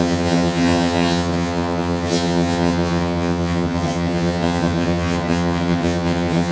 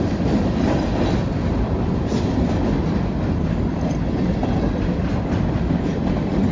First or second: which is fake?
first